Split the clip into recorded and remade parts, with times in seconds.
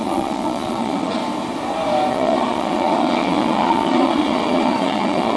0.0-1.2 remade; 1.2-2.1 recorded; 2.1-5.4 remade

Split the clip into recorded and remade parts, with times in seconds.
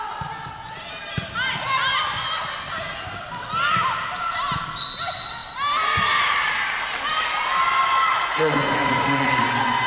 0.0-8.1 recorded; 8.1-9.4 remade; 9.4-9.9 recorded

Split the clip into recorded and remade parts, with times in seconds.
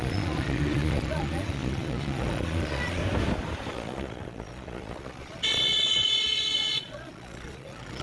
0.0-3.0 remade; 3.0-3.7 recorded; 3.7-8.0 remade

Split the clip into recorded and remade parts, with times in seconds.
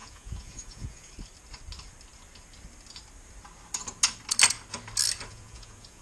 0.0-1.1 remade; 1.1-5.3 recorded; 5.3-6.0 remade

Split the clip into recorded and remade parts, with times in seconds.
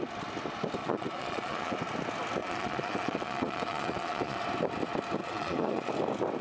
0.0-0.8 recorded; 0.8-1.8 remade; 1.8-2.4 recorded; 2.4-4.4 remade; 4.4-5.2 recorded; 5.2-5.9 remade; 5.9-6.4 recorded